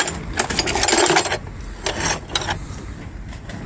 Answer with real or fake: real